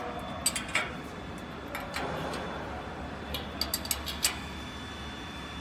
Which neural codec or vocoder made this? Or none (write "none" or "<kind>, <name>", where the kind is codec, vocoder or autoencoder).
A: none